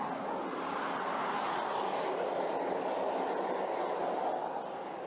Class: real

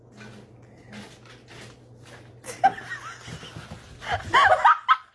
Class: real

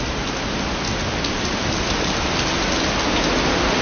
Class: real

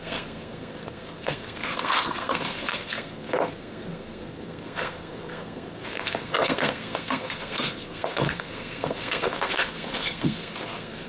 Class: fake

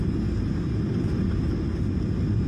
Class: real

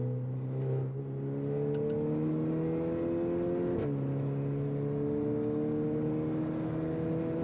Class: real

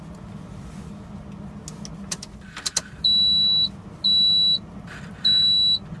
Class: real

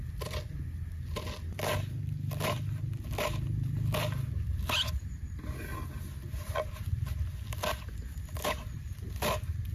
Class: real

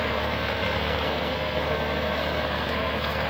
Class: fake